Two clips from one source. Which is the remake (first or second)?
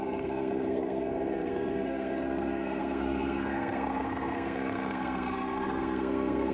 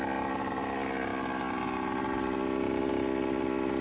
first